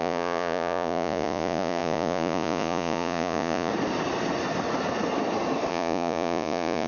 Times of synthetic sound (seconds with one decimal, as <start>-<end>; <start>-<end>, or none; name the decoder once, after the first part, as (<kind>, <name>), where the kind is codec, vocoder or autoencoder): 0.0-3.7 (vocoder, Vocos); 5.7-6.9